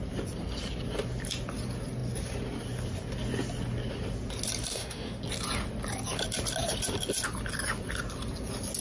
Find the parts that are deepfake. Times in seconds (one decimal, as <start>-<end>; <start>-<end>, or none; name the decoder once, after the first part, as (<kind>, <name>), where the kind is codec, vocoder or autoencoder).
4.7-5.2 (autoencoder, DAC-VAE)